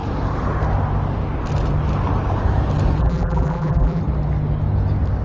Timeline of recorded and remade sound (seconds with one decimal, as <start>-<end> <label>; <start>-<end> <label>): 0.0-3.0 recorded; 3.0-4.0 remade; 4.0-5.2 recorded

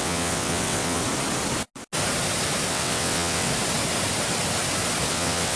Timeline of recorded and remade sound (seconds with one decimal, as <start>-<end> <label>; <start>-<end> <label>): 0.0-1.0 remade; 1.0-2.7 recorded; 2.7-3.5 remade; 3.5-5.1 recorded; 5.1-5.6 remade

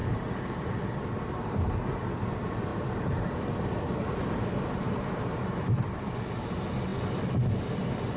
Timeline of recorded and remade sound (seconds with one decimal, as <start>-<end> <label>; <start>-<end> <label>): 0.0-2.1 remade; 2.1-2.7 recorded; 2.7-5.8 remade; 5.8-8.2 recorded

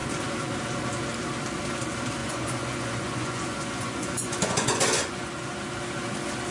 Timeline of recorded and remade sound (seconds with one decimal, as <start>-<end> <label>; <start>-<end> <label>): 0.0-2.2 recorded; 2.2-5.3 remade; 5.3-6.5 recorded

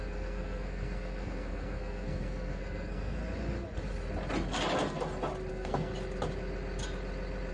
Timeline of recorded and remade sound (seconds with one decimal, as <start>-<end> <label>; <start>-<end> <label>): 0.0-3.2 remade; 3.2-5.5 recorded; 5.5-5.9 remade; 5.9-7.5 recorded

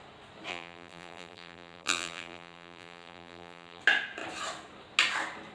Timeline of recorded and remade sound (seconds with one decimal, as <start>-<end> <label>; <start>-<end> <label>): 0.0-0.5 recorded; 0.5-3.8 remade; 3.8-5.5 recorded

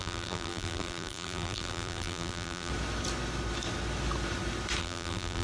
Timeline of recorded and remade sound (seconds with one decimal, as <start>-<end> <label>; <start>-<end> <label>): 0.0-2.7 remade; 2.7-4.8 recorded; 4.8-5.4 remade